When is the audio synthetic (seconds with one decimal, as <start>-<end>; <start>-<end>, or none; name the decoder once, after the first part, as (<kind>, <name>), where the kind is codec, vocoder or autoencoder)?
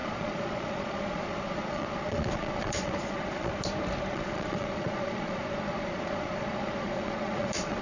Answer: 0.0-3.5 (vocoder, Vocos); 4.1-7.8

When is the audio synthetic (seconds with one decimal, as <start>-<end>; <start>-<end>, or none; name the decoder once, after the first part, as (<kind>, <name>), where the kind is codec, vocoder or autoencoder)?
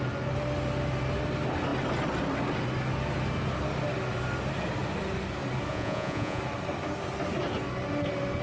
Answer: 5.7-6.4 (vocoder, Vocos)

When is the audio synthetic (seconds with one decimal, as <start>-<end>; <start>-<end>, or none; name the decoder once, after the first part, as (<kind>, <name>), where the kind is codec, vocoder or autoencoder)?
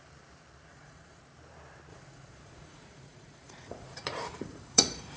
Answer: 0.7-1.2 (vocoder, Vocos); 1.9-5.2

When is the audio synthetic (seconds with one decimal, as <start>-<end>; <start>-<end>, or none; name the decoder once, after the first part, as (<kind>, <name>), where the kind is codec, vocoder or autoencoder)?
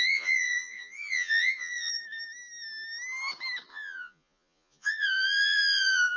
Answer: 0.0-1.9 (vocoder, Vocos); 3.7-6.2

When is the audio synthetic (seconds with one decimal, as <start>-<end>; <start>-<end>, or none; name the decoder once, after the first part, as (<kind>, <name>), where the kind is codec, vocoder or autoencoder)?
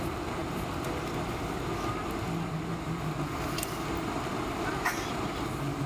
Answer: none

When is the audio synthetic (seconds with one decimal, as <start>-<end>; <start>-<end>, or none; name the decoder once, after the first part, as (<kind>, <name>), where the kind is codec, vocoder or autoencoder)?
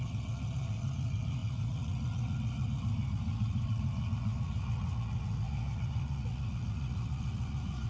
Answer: 0.0-7.9 (vocoder, Vocos)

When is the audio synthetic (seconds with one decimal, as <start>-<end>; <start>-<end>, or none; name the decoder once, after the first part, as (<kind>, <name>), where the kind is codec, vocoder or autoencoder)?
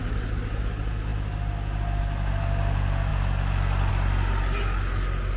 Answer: none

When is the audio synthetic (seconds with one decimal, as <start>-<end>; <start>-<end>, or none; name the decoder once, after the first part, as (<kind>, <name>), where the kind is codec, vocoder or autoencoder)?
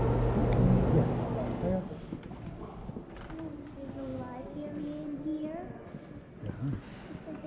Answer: none